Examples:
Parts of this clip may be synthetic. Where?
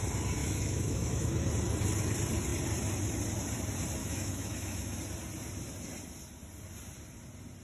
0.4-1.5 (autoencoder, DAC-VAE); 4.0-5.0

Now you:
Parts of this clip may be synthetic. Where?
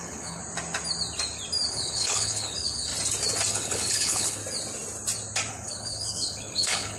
0.0-0.4 (codec, HILCodec); 1.7-2.9; 3.5-4.4; 5.5-7.0